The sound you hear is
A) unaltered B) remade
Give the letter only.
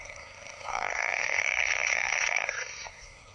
B